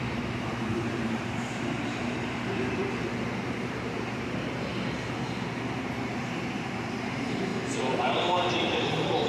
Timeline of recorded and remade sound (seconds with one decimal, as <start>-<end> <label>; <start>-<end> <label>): 0.0-2.8 remade; 2.8-3.6 recorded; 3.6-4.7 remade; 4.7-5.8 recorded; 5.8-7.5 remade; 7.5-8.5 recorded; 8.5-9.3 remade